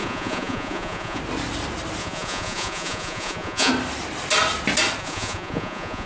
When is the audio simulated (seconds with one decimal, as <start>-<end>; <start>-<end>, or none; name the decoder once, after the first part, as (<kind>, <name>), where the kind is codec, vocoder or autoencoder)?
0.0-1.2 (vocoder, Vocos); 2.0-3.7; 5.0-6.1